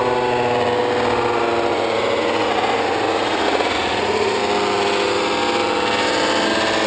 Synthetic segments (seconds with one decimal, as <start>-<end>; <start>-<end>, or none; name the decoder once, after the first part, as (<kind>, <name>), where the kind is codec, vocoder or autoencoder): 1.7-4.4 (vocoder, Vocos)